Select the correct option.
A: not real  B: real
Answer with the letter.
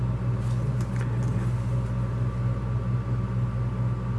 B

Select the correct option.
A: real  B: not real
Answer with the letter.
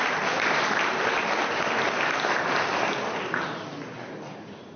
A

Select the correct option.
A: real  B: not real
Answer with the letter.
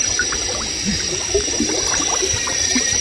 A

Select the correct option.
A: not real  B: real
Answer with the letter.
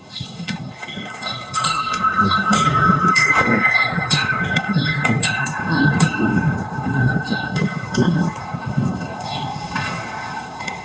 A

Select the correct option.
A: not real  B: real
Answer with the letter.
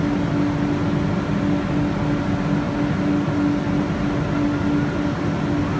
B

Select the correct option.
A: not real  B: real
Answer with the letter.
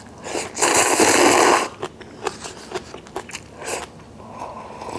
B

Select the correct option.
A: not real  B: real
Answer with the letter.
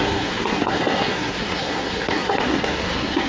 A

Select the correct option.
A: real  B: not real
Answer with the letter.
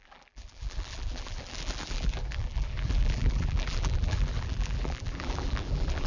B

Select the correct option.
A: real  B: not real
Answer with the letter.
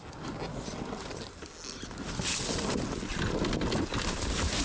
A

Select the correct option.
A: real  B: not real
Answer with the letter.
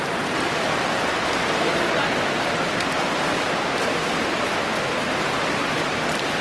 A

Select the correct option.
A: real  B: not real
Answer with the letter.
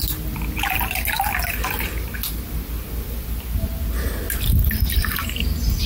A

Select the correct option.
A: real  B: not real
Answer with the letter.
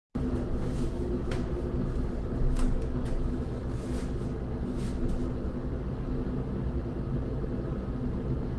A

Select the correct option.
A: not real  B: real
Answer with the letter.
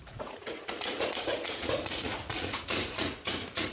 A